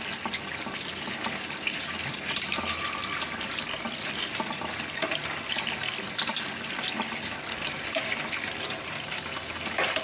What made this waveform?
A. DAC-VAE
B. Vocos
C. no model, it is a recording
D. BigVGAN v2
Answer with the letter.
C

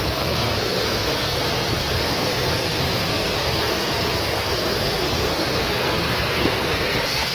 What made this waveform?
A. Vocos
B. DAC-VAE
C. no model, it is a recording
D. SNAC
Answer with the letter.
D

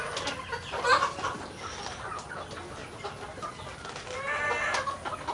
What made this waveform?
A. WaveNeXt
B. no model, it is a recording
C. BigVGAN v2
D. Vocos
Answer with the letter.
B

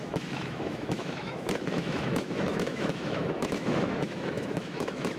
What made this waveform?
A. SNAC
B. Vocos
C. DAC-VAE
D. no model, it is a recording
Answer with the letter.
C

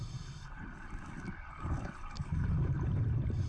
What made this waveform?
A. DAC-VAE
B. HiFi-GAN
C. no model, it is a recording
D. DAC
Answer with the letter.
C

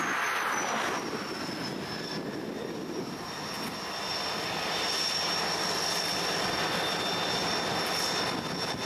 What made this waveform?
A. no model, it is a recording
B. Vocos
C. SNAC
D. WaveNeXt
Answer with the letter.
A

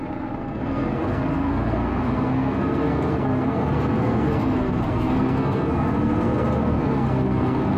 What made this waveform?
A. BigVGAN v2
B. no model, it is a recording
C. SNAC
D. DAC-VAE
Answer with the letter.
C